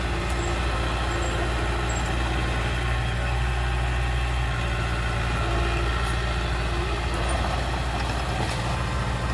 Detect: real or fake real